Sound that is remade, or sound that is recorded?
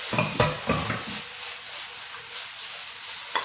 recorded